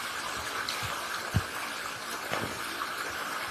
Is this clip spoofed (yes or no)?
yes